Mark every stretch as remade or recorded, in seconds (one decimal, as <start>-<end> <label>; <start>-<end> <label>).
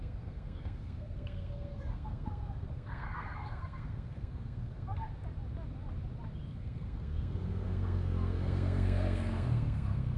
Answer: 0.0-5.1 remade; 5.1-6.5 recorded; 6.5-10.2 remade